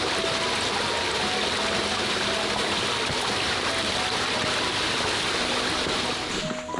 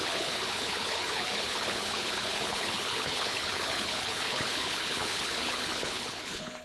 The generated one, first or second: second